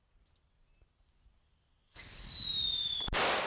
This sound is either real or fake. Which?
real